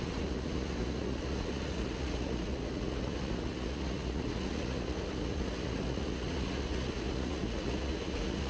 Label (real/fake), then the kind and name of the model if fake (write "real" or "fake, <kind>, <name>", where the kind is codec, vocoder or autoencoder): fake, vocoder, Vocos